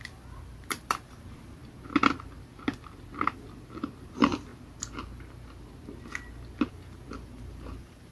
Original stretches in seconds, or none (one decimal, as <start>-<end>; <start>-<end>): 1.6-4.0; 4.5-6.7